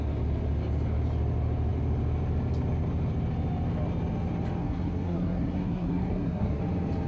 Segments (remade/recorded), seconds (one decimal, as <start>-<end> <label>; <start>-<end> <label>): 0.0-4.6 recorded; 4.6-6.6 remade; 6.6-7.1 recorded